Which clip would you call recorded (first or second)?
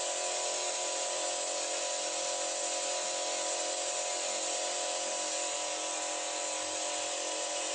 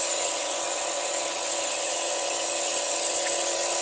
first